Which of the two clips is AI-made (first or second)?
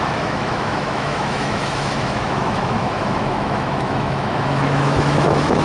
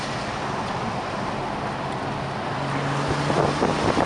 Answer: first